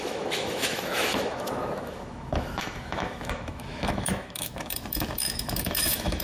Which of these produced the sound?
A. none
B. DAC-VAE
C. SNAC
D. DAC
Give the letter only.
B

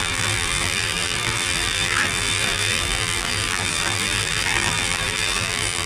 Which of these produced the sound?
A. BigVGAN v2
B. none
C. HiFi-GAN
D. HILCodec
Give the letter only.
A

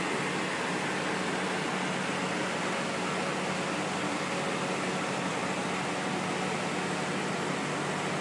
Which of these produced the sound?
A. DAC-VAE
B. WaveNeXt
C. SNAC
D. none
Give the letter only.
D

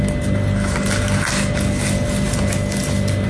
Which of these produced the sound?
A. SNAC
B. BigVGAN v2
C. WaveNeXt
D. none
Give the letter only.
D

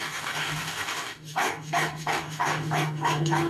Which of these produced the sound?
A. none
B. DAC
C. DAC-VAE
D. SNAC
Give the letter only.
B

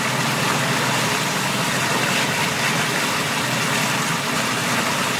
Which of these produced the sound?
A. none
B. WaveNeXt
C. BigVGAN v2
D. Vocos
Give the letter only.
A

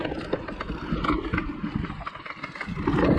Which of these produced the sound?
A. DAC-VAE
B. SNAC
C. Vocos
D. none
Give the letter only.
D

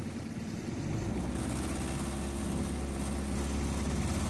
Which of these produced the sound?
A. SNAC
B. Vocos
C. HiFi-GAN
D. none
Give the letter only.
D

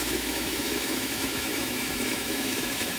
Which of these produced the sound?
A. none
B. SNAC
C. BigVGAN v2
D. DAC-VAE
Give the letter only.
D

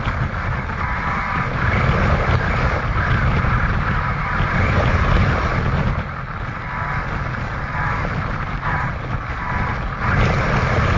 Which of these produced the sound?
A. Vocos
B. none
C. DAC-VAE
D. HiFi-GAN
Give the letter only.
B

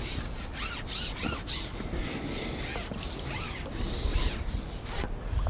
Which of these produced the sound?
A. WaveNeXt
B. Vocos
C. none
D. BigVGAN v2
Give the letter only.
C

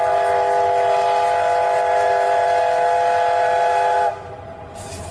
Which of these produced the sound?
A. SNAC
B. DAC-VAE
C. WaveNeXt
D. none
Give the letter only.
D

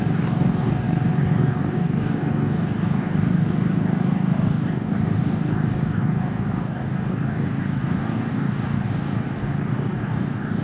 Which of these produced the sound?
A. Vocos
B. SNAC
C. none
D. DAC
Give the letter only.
D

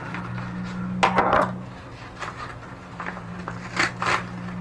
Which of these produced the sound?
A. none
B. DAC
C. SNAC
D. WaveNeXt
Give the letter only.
A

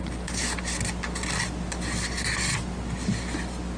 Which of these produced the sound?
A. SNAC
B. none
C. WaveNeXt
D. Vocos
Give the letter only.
B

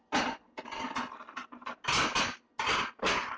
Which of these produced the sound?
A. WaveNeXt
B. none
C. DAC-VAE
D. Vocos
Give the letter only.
B